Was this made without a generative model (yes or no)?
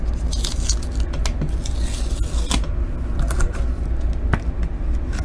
yes